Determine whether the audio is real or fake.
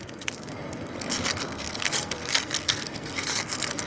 fake